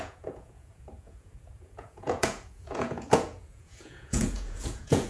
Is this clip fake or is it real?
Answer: fake